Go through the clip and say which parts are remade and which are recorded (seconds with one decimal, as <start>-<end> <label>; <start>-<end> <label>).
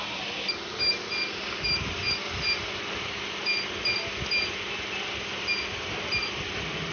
0.0-6.9 recorded